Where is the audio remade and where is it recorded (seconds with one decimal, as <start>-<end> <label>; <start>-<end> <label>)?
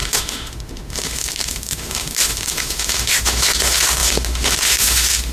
0.0-5.3 remade